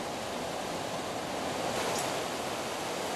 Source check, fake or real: real